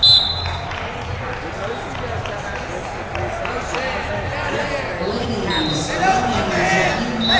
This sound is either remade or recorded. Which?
recorded